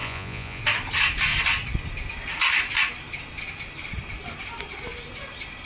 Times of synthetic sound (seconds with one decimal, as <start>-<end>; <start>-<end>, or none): 0.0-0.6

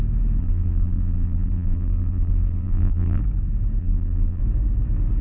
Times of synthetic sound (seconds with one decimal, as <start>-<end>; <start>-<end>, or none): 0.4-3.2; 3.8-4.4